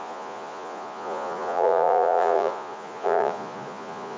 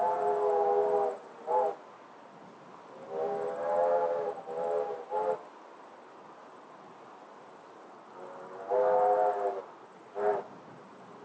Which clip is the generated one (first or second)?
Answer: first